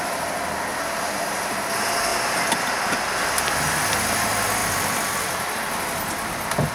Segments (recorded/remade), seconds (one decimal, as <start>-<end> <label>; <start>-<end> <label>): 0.0-0.7 recorded; 0.7-1.5 remade; 1.5-4.6 recorded; 4.6-5.6 remade; 5.6-6.7 recorded